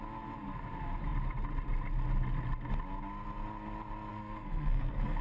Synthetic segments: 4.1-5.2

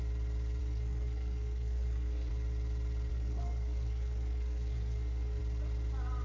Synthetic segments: 0.6-2.3; 3.1-5.4